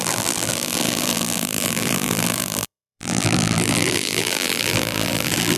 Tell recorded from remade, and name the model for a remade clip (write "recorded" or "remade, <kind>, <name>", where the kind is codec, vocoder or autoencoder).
remade, vocoder, BigVGAN v2